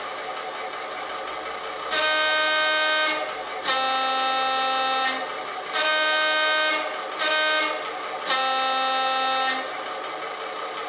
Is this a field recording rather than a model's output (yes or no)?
yes